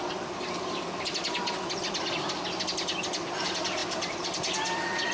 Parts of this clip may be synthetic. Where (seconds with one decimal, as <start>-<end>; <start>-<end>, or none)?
3.8-5.1